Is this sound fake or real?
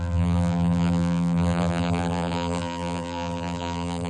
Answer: fake